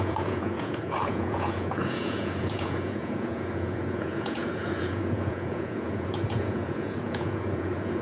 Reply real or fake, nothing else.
fake